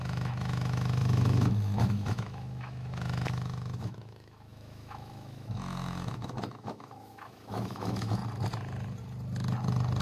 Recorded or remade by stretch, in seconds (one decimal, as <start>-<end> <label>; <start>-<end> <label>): 0.0-8.2 remade; 8.2-10.0 recorded